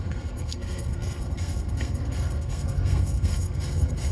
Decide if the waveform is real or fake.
fake